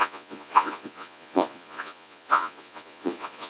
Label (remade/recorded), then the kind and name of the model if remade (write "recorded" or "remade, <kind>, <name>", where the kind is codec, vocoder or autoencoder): remade, vocoder, Vocos